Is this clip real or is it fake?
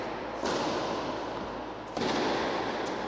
real